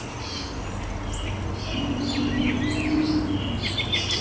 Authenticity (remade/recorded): recorded